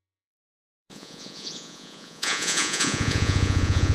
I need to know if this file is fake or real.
fake